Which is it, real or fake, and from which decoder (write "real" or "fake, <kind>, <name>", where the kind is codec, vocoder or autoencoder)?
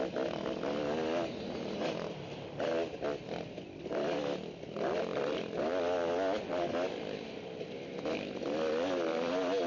real